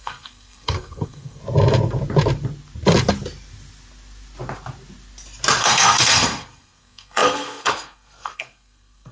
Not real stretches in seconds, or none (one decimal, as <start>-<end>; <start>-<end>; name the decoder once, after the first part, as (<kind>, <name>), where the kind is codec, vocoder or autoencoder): 0.0-1.4 (codec, SNAC); 5.6-9.1